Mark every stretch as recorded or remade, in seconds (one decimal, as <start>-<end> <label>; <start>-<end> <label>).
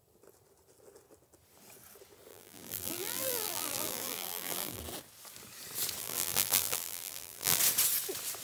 0.0-2.3 recorded; 2.3-4.8 remade; 4.8-6.0 recorded; 6.0-7.6 remade; 7.6-8.4 recorded